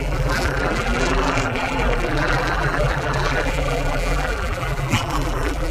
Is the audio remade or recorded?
remade